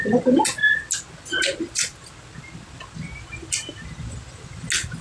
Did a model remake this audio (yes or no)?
no